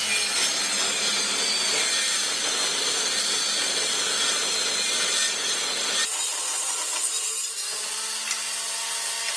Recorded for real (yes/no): yes